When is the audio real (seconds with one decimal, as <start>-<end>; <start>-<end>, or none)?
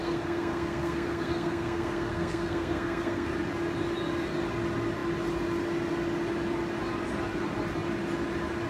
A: 3.3-8.7